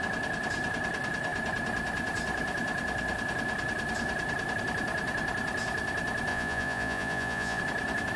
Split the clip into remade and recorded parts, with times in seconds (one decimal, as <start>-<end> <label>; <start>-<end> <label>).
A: 0.0-6.3 recorded; 6.3-7.6 remade; 7.6-8.2 recorded